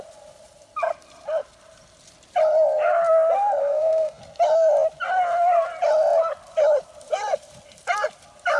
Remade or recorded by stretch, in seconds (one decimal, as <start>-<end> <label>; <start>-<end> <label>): 0.0-3.6 recorded; 3.6-4.2 remade; 4.2-8.6 recorded